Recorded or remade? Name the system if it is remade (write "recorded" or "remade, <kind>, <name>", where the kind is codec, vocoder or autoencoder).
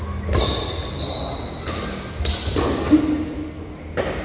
recorded